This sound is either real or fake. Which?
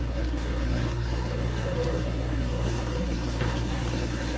fake